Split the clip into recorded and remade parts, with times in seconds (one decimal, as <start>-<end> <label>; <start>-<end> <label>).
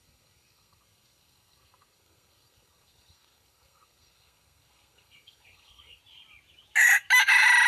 0.0-6.0 remade; 6.0-7.7 recorded